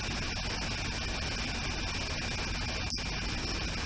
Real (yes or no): yes